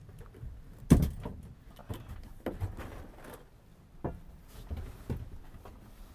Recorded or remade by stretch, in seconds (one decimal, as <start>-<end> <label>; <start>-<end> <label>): 0.0-6.1 recorded